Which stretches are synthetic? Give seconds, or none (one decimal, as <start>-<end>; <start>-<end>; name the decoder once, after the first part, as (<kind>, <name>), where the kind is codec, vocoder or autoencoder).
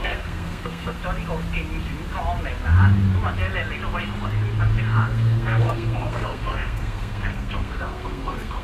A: 0.0-1.0 (codec, SNAC); 4.8-8.6